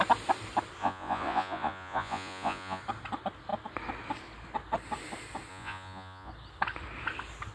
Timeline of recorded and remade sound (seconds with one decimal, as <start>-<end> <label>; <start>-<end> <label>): 0.0-0.8 recorded; 0.8-2.8 remade; 2.8-5.5 recorded; 5.5-6.3 remade; 6.3-7.5 recorded